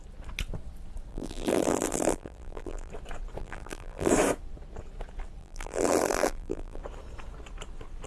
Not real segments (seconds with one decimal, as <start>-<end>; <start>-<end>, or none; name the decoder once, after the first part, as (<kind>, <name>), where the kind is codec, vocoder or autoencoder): 1.1-2.9 (vocoder, BigVGAN v2); 3.4-4.1; 5.4-6.8